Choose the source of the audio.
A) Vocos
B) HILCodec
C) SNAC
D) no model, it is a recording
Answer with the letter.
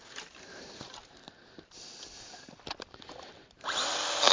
D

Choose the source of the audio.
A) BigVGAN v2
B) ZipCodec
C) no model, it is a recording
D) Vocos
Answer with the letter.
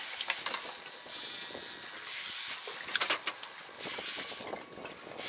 C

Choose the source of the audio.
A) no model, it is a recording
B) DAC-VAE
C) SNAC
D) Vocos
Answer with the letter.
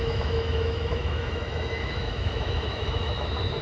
B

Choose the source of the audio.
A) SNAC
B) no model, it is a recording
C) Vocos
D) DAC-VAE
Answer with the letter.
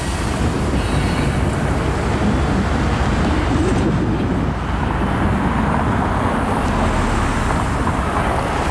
B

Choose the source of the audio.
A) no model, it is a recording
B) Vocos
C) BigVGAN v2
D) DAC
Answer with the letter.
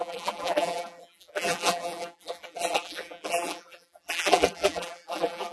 C